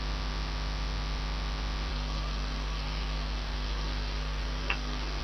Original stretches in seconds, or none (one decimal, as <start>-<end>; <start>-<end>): 0.0-1.9